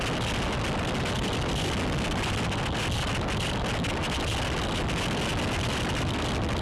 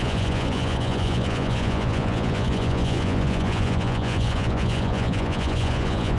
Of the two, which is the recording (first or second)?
first